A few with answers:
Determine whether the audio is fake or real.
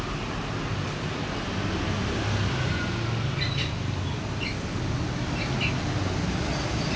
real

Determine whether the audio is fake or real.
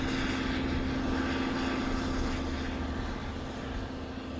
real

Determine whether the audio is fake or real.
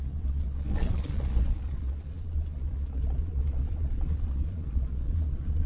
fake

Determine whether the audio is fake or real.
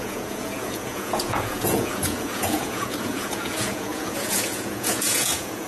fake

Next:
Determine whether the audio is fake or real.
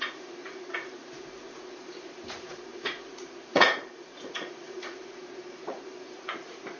fake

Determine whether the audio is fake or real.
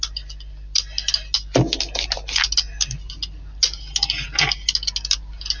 real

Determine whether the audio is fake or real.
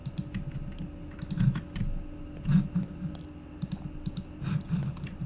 real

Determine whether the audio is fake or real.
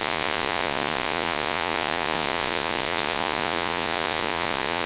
fake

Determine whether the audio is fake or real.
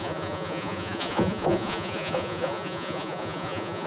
fake